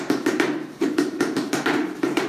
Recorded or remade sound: remade